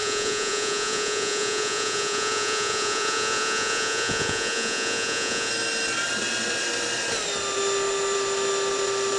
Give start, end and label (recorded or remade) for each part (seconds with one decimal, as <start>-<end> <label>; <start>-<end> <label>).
0.0-5.5 remade; 5.5-9.2 recorded

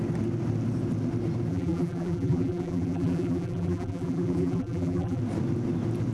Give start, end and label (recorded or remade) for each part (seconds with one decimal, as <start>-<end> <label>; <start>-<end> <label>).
0.0-1.5 recorded; 1.5-5.2 remade; 5.2-6.1 recorded

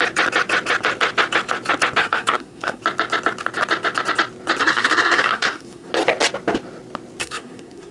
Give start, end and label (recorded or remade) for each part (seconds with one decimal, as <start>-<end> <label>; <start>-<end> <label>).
0.0-2.0 recorded; 2.0-2.8 remade; 2.8-4.6 recorded; 4.6-5.9 remade; 5.9-7.2 recorded; 7.2-7.9 remade

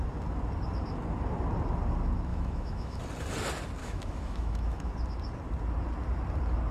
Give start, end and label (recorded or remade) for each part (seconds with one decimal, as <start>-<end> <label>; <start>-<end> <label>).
0.0-2.3 recorded; 2.3-3.0 remade; 3.0-3.8 recorded; 3.8-4.9 remade; 4.9-6.7 recorded